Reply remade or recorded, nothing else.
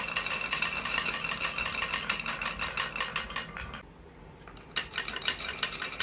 recorded